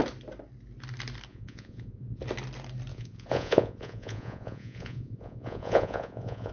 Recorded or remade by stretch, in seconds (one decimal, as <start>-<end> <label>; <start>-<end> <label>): 0.0-1.3 recorded; 1.3-2.2 remade; 2.2-2.9 recorded; 2.9-6.5 remade